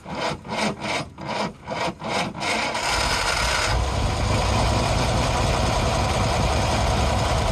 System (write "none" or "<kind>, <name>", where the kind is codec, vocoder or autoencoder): none